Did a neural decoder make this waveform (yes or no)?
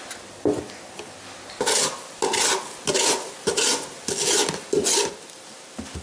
no